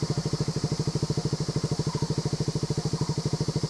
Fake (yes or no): no